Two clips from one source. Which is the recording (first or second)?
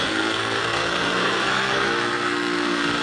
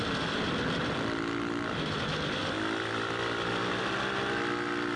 second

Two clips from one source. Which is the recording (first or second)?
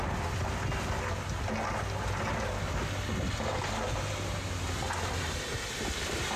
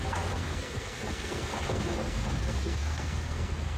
first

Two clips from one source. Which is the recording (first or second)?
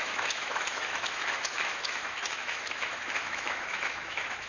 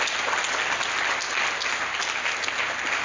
second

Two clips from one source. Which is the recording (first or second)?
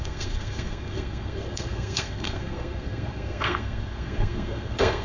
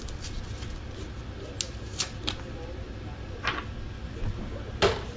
second